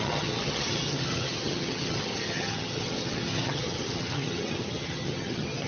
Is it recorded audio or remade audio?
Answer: remade